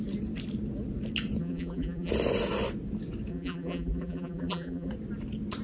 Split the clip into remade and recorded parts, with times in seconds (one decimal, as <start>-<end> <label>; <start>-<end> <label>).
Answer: 0.0-1.4 recorded; 1.4-2.1 remade; 2.1-3.3 recorded; 3.3-4.9 remade; 4.9-5.6 recorded